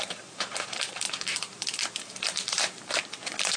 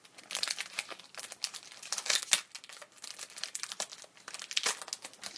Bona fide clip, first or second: second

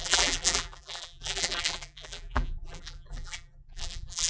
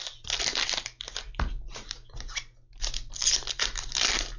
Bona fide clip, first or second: second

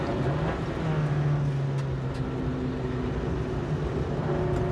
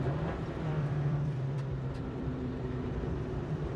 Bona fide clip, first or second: first